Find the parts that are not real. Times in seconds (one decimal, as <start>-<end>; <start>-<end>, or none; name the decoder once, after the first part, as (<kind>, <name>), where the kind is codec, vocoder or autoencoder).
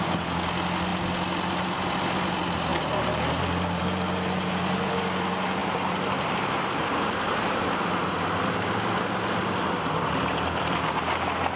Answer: 2.7-4.9 (vocoder, BigVGAN v2); 5.6-8.5